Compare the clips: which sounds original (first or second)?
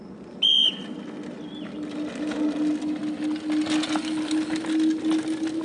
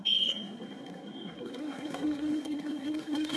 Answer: first